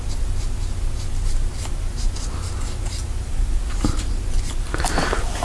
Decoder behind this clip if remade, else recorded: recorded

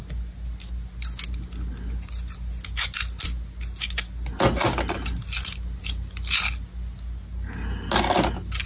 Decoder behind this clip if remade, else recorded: recorded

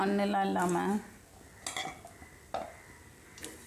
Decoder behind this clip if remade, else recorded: recorded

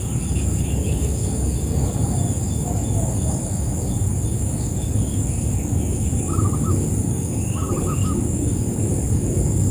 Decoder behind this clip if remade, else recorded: remade, codec, DAC